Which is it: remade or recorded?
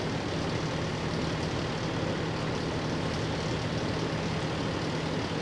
recorded